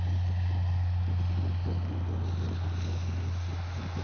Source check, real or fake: real